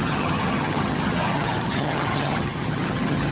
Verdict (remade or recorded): remade